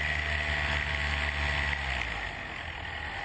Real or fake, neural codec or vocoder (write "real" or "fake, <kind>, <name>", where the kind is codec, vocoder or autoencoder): real